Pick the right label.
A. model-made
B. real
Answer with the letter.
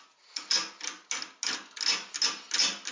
B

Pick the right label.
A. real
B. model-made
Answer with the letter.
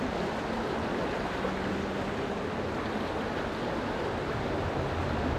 A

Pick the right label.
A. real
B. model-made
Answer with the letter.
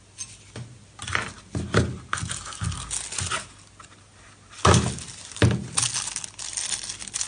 A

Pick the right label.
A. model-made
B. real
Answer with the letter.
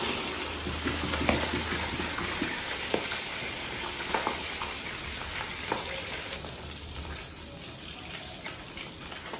B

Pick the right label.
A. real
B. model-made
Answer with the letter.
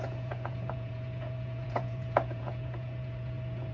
B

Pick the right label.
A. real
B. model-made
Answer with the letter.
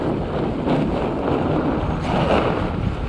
A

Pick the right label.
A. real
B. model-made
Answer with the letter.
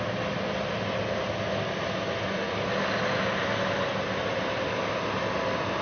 A